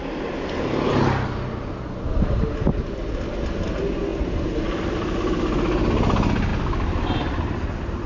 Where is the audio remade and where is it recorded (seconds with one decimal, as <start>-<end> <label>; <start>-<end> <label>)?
0.0-8.1 recorded